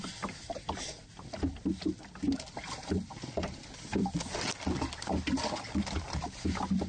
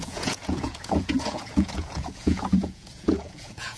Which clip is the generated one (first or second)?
second